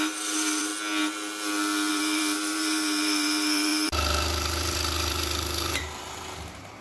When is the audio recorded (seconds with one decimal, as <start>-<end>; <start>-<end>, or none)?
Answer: 0.7-1.9